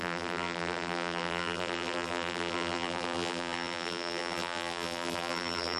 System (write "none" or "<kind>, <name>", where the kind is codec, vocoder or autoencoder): vocoder, BigVGAN v2